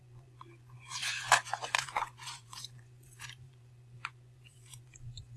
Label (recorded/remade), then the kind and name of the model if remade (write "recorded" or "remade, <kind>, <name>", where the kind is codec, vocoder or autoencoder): remade, vocoder, Vocos